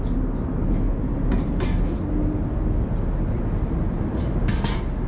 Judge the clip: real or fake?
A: real